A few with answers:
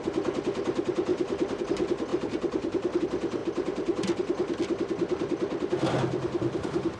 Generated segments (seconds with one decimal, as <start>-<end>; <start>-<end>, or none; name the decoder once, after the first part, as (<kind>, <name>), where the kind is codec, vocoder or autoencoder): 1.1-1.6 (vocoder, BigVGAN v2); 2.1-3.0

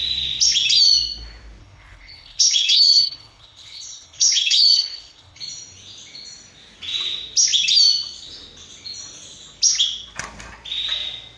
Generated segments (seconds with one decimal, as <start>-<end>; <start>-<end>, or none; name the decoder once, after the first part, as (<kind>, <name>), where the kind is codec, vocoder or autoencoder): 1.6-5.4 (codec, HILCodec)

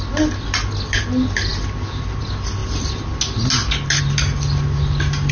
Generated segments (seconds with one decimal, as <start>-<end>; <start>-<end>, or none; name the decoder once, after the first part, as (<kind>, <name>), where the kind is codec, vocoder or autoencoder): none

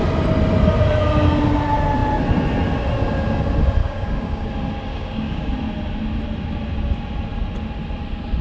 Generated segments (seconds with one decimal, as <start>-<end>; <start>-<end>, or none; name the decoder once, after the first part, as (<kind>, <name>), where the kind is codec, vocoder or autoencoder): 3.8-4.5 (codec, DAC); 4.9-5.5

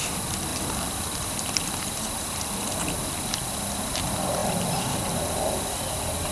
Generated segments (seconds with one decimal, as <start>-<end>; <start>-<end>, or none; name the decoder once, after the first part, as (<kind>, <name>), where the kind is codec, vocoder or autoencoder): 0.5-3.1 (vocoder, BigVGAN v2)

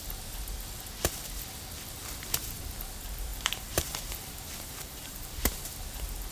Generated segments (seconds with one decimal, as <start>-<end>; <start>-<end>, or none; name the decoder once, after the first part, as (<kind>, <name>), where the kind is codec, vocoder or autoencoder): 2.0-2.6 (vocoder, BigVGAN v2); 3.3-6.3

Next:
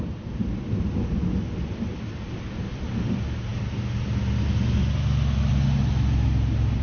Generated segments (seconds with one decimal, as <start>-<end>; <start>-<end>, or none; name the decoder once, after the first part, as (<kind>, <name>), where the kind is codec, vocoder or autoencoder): none

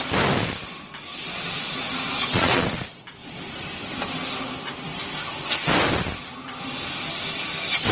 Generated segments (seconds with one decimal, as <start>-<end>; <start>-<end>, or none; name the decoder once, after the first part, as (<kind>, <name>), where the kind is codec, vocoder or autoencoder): 1.1-3.4 (vocoder, Vocos)